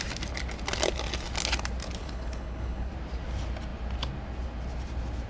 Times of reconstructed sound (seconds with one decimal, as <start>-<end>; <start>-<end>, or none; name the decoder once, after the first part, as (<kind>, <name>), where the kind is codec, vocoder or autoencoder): 2.0-2.9 (codec, HILCodec)